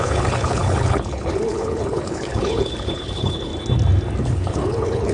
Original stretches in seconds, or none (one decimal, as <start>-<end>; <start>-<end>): 3.5-4.2